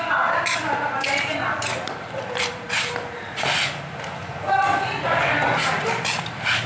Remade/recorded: remade